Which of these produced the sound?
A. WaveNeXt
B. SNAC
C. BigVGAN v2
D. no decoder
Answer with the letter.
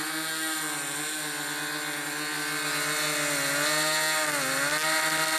D